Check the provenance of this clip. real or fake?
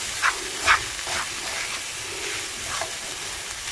real